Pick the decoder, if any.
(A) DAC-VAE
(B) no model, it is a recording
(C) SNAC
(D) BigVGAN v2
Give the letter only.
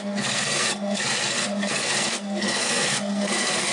C